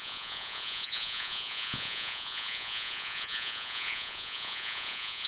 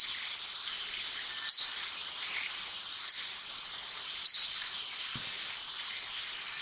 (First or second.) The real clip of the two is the second